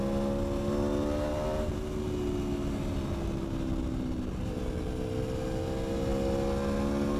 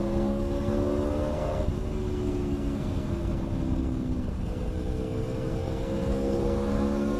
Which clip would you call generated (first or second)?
second